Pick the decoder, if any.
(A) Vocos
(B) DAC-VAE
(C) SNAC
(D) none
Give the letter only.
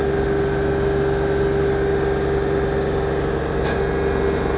D